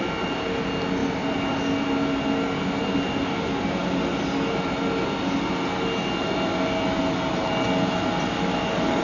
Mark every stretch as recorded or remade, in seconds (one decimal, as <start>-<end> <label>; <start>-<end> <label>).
0.0-9.0 recorded